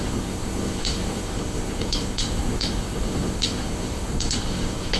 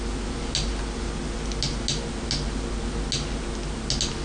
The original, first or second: second